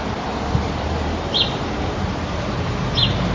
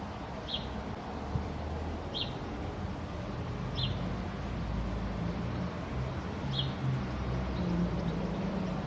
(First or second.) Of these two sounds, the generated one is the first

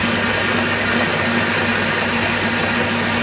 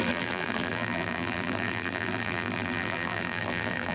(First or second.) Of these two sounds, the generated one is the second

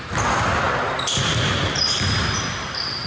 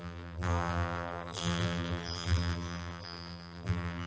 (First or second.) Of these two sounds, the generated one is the second